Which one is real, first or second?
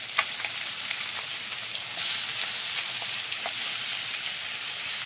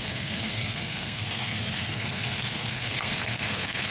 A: first